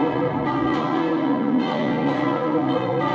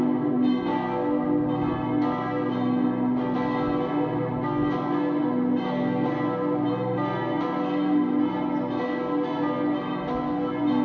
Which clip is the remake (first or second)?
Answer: first